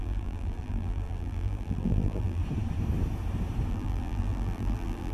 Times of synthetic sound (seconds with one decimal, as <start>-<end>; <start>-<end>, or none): 0.0-2.4; 3.7-5.1